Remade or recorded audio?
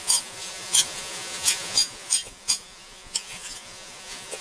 remade